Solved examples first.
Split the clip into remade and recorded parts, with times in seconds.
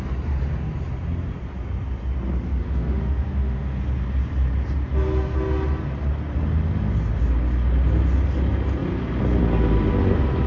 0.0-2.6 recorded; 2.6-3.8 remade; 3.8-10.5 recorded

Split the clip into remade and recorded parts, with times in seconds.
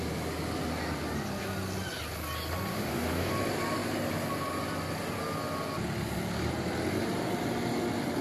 0.0-2.7 recorded; 2.7-3.3 remade; 3.3-8.2 recorded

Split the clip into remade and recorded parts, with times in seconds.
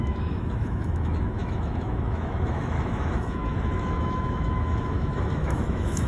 0.0-6.1 remade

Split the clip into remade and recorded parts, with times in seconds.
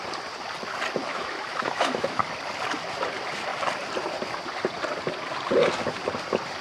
0.0-1.1 recorded; 1.1-2.2 remade; 2.2-6.6 recorded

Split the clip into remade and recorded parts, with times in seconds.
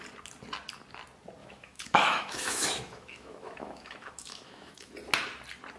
0.0-1.4 recorded; 1.4-4.9 remade; 4.9-5.8 recorded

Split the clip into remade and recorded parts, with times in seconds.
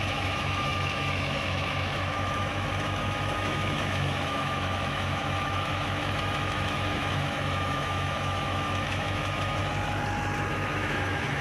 0.0-9.6 remade; 9.6-10.5 recorded; 10.5-11.4 remade